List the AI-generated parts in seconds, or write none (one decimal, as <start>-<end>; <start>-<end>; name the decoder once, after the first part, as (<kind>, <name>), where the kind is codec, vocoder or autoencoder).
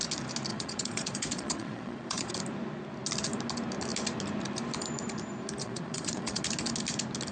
0.5-2.3 (vocoder, Vocos); 5.6-6.4